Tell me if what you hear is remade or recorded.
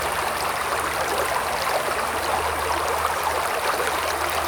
recorded